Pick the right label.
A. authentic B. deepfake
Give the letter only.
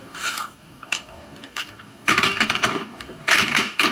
B